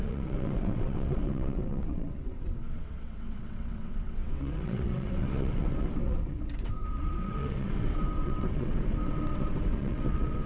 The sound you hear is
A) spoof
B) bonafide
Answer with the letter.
A